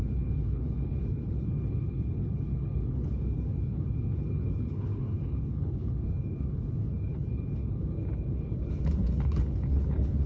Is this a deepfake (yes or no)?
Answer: yes